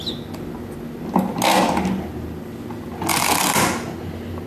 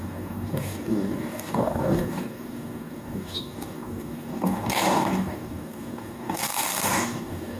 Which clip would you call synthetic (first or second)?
second